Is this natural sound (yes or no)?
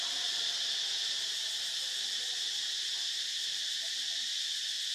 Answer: yes